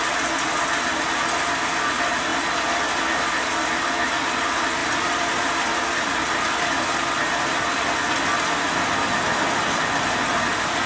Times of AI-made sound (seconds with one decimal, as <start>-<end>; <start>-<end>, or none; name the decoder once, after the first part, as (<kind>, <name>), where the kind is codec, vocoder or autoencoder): 2.3-4.3 (vocoder, BigVGAN v2); 4.8-6.8